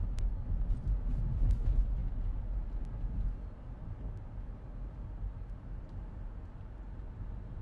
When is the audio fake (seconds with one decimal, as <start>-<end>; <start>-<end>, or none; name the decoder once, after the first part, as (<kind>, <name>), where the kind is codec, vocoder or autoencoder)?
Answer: none